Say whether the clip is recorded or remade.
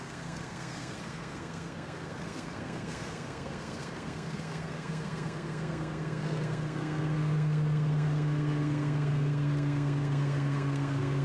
remade